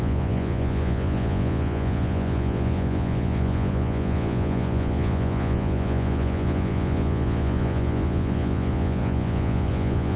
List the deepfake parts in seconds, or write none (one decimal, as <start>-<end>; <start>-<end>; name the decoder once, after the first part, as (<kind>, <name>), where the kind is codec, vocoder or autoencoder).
0.0-10.2 (vocoder, Vocos)